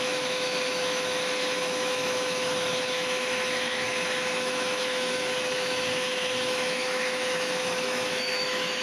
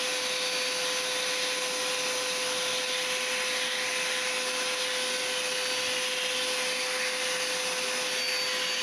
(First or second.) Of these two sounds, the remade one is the first